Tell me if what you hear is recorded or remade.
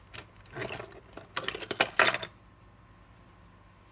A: recorded